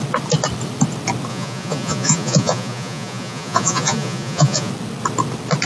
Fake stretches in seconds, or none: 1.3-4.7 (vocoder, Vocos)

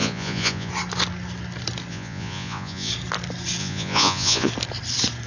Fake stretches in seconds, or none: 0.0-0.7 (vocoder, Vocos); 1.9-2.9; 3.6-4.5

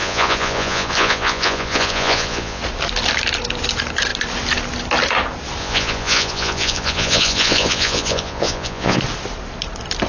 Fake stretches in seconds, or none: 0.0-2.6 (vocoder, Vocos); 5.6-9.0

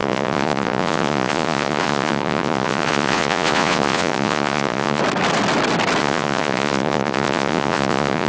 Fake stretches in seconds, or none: 0.0-5.0 (vocoder, Vocos); 6.0-8.3